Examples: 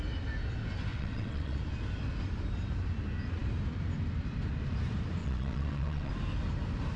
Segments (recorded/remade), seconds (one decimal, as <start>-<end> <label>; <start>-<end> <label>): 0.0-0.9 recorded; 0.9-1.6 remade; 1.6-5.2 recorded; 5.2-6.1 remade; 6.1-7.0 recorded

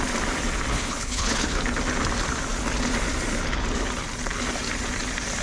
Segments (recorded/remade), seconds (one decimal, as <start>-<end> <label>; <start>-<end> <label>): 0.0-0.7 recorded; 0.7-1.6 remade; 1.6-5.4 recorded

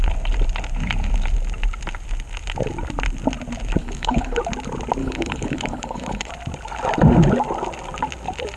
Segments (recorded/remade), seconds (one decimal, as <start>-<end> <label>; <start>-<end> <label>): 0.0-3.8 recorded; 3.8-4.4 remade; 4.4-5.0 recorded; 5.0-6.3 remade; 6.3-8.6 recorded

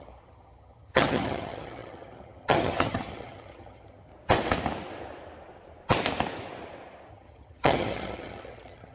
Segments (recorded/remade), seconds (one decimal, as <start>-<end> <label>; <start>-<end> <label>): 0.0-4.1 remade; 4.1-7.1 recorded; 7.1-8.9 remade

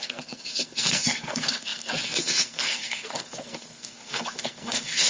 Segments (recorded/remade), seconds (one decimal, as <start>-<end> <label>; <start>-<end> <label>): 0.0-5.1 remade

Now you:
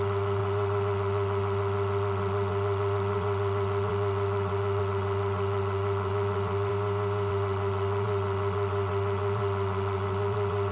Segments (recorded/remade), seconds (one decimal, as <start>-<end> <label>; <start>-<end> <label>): 0.0-6.7 remade; 6.7-7.3 recorded; 7.3-10.7 remade